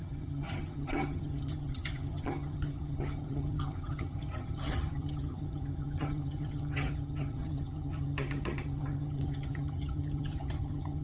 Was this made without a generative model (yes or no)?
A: no